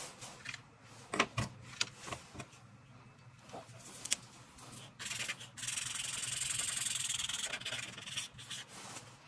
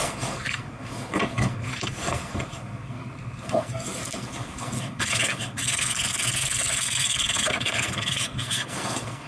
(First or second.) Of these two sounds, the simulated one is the second